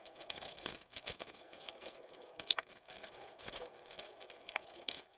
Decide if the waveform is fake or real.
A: fake